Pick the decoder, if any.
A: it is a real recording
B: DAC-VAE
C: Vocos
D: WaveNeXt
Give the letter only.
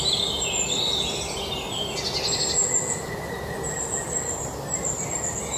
A